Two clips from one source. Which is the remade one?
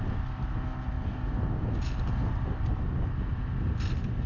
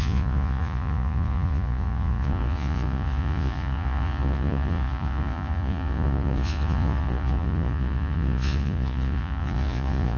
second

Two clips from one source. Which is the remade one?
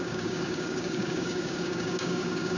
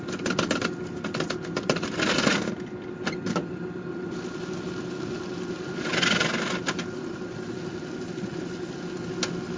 first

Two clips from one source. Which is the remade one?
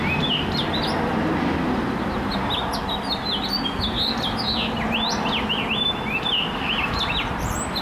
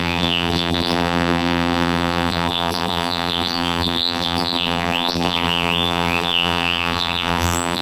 second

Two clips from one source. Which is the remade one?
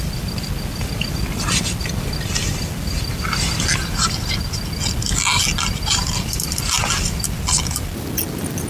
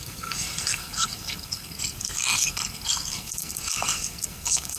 second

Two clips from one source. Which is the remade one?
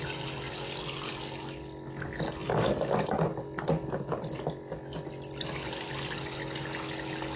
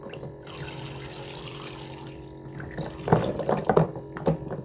second